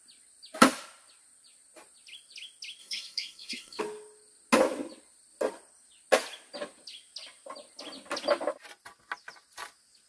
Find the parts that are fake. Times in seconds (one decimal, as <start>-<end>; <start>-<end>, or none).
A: 2.8-3.8